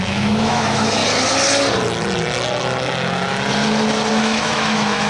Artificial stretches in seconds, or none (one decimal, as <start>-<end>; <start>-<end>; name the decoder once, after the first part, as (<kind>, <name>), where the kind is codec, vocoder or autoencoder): 0.0-1.0 (autoencoder, DAC-VAE); 4.1-5.1